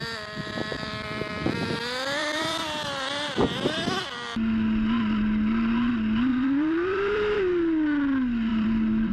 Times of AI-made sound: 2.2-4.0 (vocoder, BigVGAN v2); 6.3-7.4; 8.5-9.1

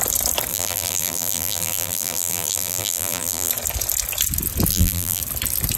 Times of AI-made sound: 0.5-3.5 (vocoder, BigVGAN v2); 4.7-5.2